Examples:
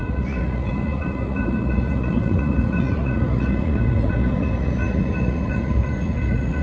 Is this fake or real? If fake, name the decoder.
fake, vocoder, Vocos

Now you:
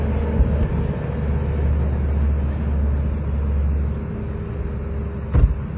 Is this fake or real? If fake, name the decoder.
real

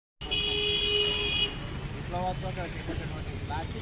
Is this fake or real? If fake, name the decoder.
real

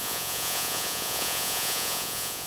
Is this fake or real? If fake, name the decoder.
fake, vocoder, Vocos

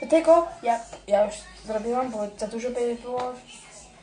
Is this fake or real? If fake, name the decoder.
real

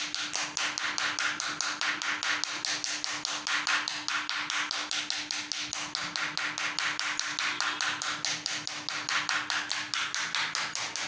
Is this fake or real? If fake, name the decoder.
real